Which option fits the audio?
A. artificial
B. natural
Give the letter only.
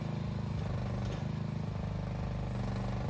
B